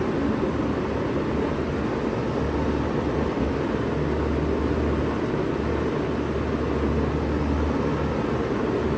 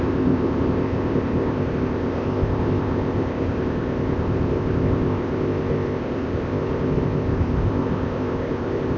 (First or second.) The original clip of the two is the first